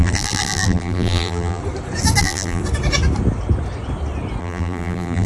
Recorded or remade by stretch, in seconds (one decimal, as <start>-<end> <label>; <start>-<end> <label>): 0.0-1.6 remade; 1.6-2.2 recorded; 2.2-2.6 remade; 2.6-4.4 recorded; 4.4-5.3 remade